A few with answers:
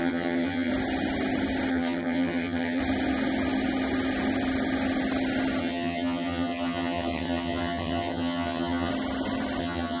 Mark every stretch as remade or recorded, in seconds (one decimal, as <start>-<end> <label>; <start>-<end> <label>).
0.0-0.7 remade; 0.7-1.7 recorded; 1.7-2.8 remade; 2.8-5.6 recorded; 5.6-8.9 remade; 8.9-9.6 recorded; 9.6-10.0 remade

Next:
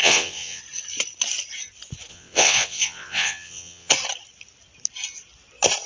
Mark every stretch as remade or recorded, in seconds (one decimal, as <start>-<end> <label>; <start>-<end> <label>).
0.0-0.6 remade; 0.6-2.1 recorded; 2.1-3.9 remade; 3.9-5.9 recorded

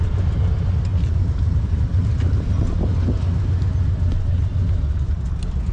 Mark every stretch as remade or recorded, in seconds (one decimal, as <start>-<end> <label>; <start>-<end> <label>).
0.0-0.9 recorded; 0.9-2.9 remade; 2.9-5.7 recorded

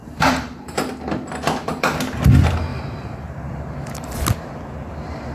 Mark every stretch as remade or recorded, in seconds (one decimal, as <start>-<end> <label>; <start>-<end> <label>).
0.0-0.9 remade; 0.9-2.7 recorded; 2.7-4.1 remade; 4.1-5.3 recorded

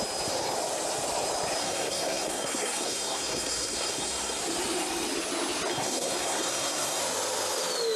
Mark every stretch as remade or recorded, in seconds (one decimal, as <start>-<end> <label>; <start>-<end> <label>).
0.0-1.6 recorded; 1.6-4.4 remade; 4.4-5.7 recorded; 5.7-7.0 remade; 7.0-8.0 recorded